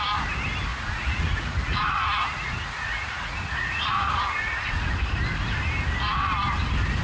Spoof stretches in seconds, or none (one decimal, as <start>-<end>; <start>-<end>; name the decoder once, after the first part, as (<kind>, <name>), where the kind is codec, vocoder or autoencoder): 0.7-4.9 (vocoder, Vocos)